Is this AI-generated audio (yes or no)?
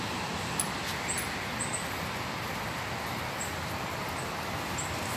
no